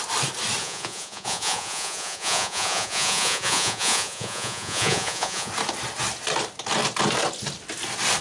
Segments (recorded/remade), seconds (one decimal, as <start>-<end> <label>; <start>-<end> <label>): 0.0-0.6 recorded; 0.6-5.5 remade; 5.5-8.2 recorded